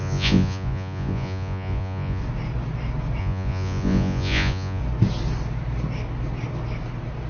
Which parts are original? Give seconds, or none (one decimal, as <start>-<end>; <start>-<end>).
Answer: 2.2-3.2; 4.8-7.3